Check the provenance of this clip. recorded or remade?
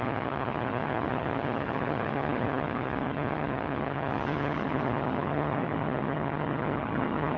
remade